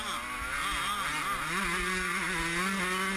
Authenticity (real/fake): real